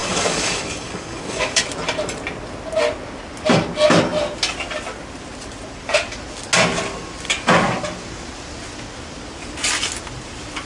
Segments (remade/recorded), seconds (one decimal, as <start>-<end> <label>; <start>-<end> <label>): 0.0-1.6 remade; 1.6-10.7 recorded